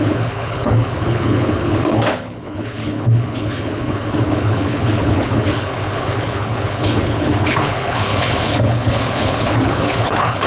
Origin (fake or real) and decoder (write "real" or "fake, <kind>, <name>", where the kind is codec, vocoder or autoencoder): fake, codec, HILCodec